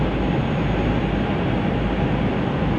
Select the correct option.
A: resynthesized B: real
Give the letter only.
B